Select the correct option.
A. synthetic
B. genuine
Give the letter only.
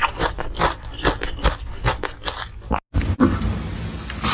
B